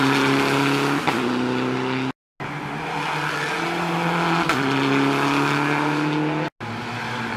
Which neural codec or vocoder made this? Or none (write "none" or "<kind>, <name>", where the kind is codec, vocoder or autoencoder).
none